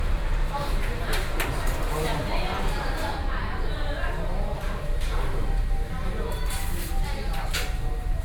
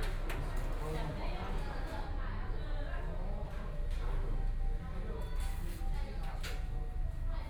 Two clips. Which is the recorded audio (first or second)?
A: second